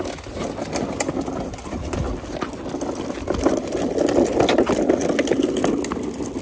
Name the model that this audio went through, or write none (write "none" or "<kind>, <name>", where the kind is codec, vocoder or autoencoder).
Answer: none